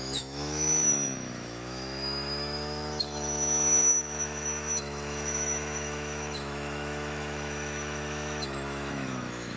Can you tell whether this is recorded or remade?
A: remade